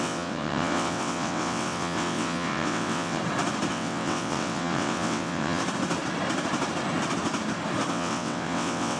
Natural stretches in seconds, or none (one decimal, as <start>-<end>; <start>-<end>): 3.2-3.7; 5.6-7.9